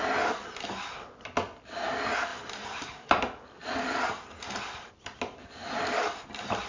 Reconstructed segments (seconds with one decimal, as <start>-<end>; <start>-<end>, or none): none